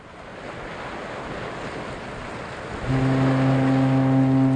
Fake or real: real